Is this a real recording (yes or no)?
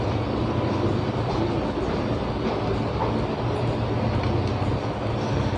yes